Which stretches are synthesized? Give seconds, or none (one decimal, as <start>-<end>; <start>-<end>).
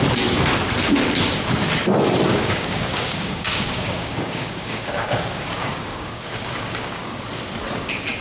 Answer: 2.3-7.2